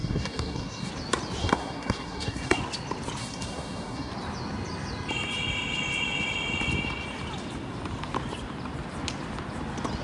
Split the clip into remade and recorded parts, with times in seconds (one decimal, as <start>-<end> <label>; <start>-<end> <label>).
0.0-0.9 remade; 0.9-1.4 recorded; 1.4-2.6 remade; 2.6-3.2 recorded; 3.2-4.1 remade; 4.1-10.0 recorded